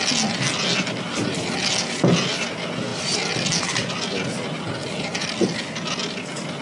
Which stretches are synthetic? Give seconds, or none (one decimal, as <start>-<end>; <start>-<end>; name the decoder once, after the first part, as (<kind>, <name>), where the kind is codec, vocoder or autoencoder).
none